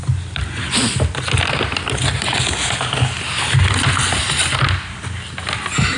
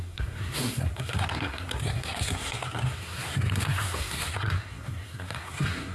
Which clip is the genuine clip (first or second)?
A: first